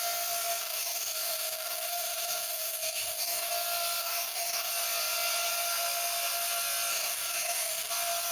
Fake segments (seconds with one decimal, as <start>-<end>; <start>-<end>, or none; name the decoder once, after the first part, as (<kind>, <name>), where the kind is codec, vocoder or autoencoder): 0.6-3.5 (codec, DAC); 4.0-4.7; 6.9-7.9